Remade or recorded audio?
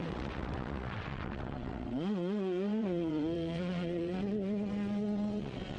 remade